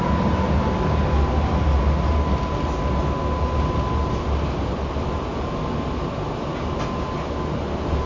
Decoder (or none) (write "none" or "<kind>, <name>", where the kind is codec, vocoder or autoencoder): none